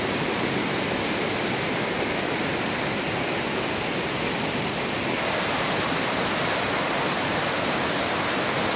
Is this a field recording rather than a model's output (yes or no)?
yes